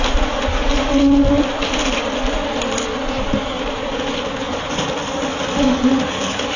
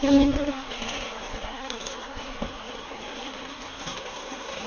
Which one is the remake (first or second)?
second